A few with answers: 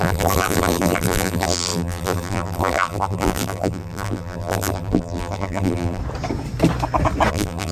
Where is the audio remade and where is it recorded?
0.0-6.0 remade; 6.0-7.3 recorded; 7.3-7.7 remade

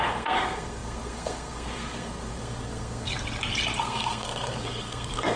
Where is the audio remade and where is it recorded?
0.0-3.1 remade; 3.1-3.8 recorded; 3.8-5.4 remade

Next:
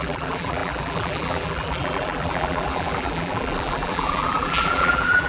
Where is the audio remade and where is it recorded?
0.0-5.3 remade

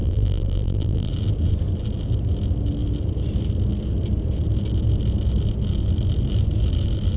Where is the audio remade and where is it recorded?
0.0-1.1 remade; 1.1-7.2 recorded

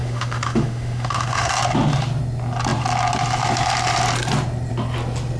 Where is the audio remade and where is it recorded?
0.0-1.5 remade; 1.5-5.4 recorded

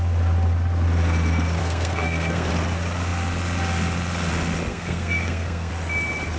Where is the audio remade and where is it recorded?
0.0-1.6 recorded; 1.6-2.5 remade; 2.5-4.7 recorded; 4.7-5.7 remade; 5.7-6.4 recorded